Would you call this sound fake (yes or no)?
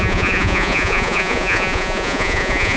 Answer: yes